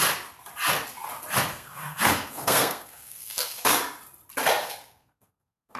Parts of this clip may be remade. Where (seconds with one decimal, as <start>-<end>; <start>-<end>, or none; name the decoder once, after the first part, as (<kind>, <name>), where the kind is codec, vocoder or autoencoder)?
1.5-3.8 (codec, SNAC); 4.6-5.8

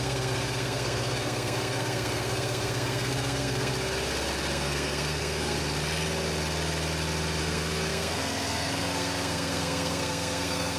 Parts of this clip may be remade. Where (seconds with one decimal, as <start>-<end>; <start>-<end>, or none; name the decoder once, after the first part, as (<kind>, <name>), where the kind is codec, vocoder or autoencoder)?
0.0-3.7 (codec, SNAC); 4.5-5.6; 7.4-10.8

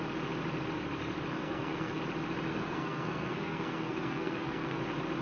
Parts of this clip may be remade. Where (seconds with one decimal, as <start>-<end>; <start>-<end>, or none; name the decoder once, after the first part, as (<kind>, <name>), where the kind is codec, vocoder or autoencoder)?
1.3-2.0 (codec, SNAC); 2.5-4.8

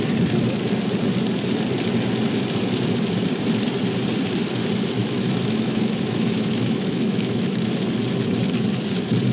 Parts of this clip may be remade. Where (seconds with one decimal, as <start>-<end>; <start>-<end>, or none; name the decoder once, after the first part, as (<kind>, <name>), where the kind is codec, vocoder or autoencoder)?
5.0-7.7 (autoencoder, DAC-VAE)

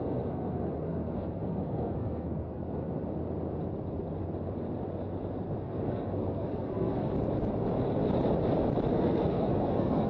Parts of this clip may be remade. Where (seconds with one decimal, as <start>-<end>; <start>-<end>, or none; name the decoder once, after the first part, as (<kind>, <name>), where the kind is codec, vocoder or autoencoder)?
0.0-2.6 (codec, SNAC); 5.6-7.1; 8.9-10.1

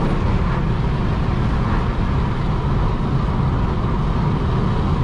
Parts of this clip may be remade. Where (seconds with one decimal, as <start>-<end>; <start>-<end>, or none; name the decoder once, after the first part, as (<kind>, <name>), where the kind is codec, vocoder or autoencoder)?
none

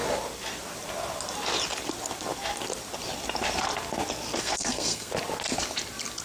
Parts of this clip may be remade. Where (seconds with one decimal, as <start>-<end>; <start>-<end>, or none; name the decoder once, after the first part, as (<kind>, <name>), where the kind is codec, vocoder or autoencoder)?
4.4-5.1 (codec, SNAC)